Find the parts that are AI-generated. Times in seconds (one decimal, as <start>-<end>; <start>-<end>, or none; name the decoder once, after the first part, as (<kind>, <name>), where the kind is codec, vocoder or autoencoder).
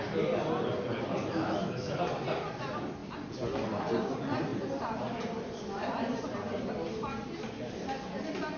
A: 1.2-1.9 (autoencoder, DAC-VAE)